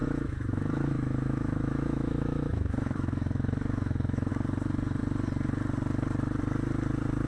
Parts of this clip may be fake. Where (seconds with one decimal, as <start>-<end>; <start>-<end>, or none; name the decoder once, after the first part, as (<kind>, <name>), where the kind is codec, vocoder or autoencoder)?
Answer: 0.0-4.3 (autoencoder, DAC-VAE)